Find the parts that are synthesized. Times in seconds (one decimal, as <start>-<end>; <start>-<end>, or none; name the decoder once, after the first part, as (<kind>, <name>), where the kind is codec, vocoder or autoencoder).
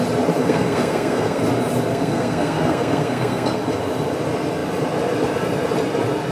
0.4-1.4 (codec, SNAC); 1.9-3.8